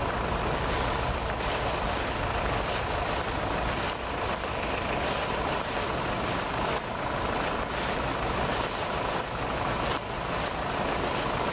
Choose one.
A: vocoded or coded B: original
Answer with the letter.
B